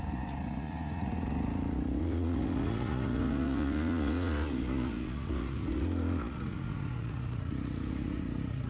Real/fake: fake